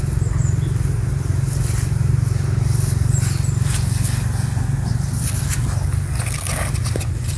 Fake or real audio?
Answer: real